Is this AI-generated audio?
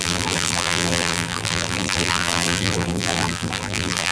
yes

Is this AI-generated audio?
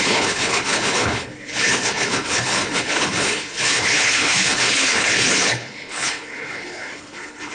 yes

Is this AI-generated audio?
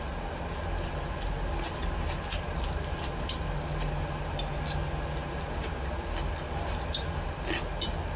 no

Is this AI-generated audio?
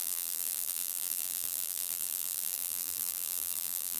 yes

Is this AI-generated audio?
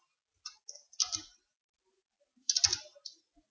no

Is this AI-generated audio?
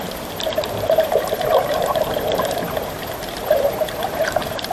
yes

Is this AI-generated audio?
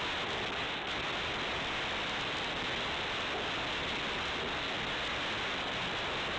no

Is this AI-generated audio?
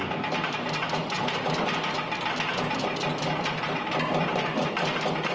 no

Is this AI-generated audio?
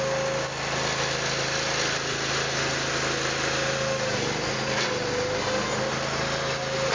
no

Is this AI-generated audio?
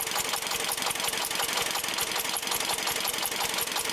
no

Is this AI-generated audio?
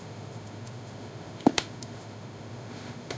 yes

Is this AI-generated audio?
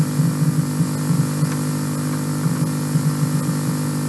no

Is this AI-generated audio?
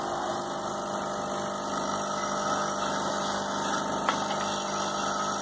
no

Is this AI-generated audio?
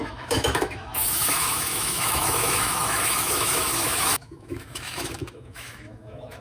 yes